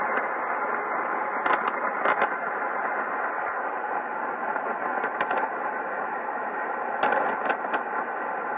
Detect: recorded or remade recorded